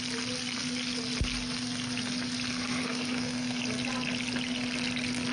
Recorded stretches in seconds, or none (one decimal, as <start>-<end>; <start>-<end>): 0.0-2.8; 3.6-5.3